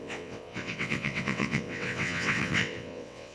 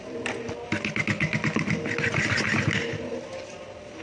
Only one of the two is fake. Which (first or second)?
first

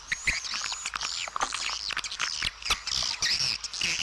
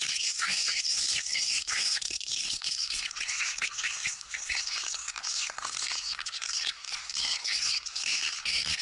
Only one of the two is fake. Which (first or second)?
second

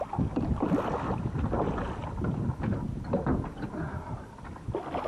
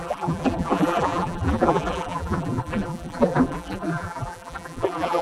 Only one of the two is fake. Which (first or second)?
second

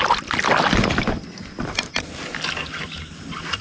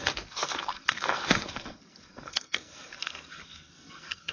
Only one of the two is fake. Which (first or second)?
second